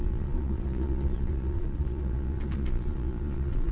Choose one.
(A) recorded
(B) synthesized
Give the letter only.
B